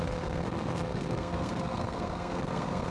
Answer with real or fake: fake